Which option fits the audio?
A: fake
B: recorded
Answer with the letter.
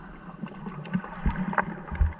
B